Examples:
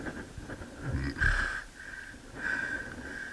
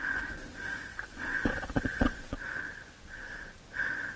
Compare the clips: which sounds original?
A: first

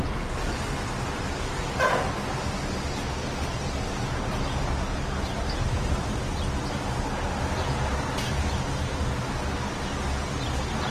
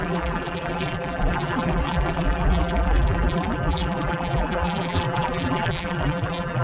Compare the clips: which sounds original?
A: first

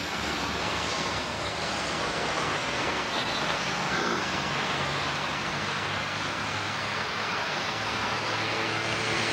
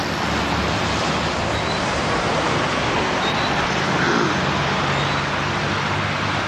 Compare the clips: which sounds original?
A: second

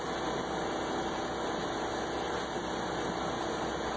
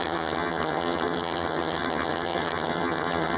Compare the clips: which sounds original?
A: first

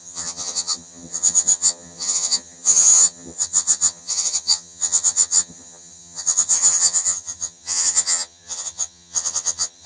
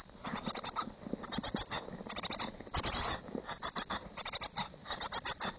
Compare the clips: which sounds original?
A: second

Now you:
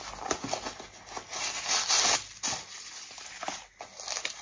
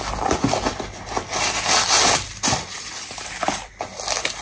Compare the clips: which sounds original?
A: first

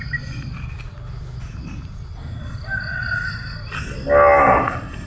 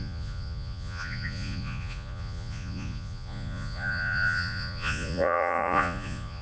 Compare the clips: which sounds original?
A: first